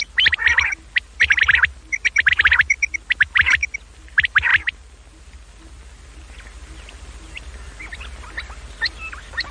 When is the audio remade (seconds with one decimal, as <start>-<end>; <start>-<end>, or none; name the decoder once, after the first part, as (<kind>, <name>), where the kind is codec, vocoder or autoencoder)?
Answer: none